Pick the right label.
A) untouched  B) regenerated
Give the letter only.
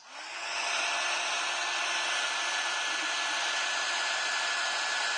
A